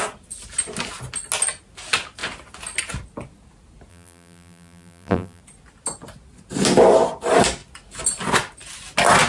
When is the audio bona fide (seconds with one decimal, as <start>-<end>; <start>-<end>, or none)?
0.0-3.9; 5.4-9.3